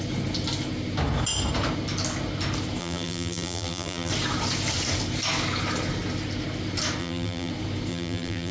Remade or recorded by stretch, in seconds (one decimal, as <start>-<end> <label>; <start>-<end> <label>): 0.0-2.8 recorded; 2.8-4.1 remade; 4.1-7.0 recorded; 7.0-7.5 remade; 7.5-7.9 recorded; 7.9-8.5 remade